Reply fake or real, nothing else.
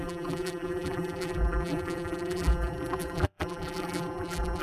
fake